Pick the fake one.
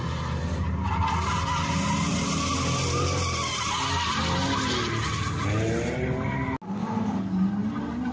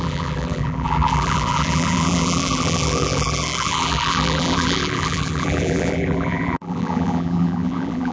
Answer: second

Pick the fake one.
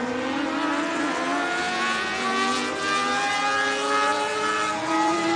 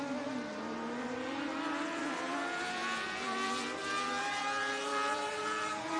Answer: second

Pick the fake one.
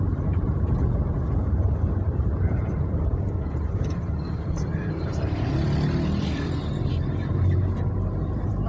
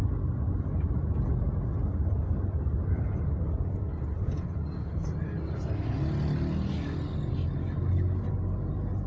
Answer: first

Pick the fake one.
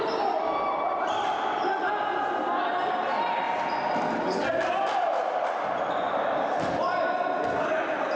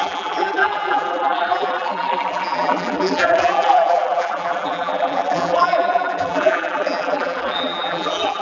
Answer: second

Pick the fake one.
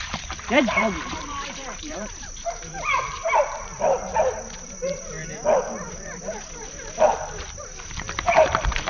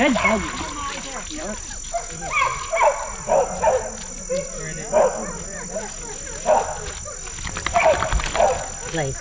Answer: first